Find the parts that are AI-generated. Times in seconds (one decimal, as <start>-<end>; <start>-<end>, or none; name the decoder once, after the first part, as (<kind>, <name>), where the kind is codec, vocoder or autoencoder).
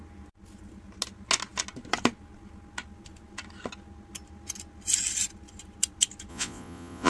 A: 6.3-7.1 (vocoder, Vocos)